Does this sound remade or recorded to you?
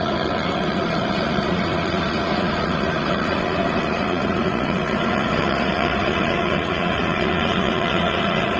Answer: remade